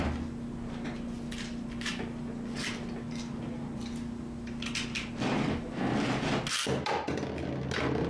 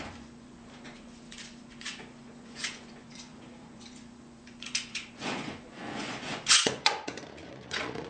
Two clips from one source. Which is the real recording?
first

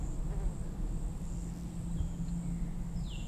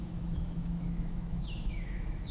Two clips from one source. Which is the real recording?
first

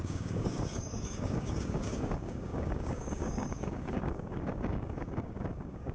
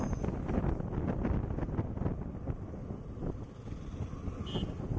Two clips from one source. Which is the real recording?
second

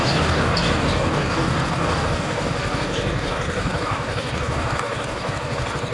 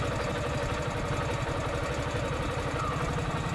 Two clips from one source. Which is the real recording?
second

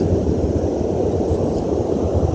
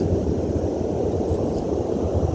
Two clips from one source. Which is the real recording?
first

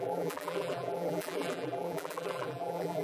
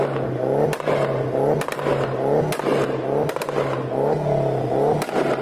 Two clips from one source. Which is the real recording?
second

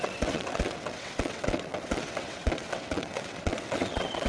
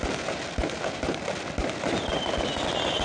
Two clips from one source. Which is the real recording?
second